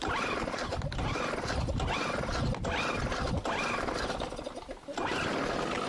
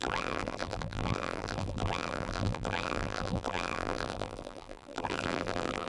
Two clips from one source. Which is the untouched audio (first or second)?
first